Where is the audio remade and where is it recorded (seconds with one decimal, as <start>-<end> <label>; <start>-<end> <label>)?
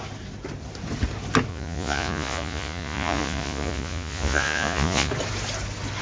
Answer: 0.0-1.5 recorded; 1.5-5.1 remade; 5.1-6.0 recorded